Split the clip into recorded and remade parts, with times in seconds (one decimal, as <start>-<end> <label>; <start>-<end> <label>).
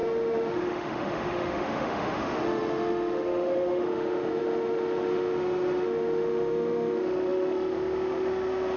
0.0-8.8 remade